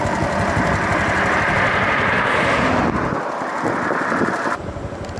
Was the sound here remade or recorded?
recorded